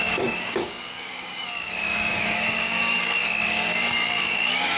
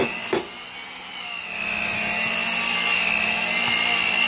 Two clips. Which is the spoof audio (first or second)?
first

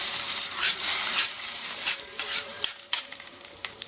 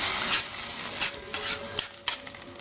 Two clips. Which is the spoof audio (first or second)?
first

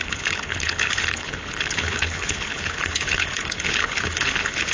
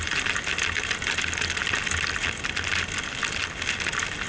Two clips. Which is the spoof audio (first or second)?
first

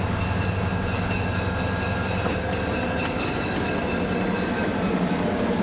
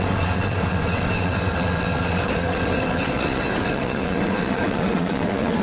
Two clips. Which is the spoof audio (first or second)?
second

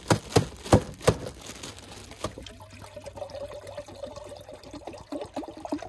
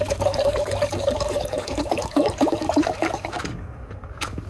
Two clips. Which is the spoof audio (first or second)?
second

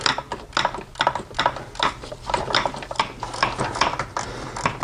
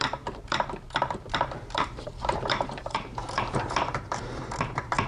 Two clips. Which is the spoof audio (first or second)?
second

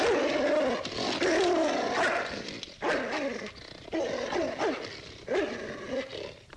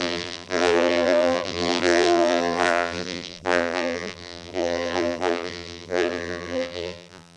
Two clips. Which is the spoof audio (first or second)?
second